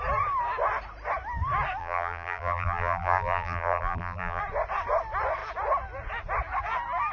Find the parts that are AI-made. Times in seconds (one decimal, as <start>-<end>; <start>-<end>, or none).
1.8-4.4